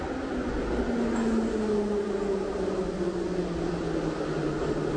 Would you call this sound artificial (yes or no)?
no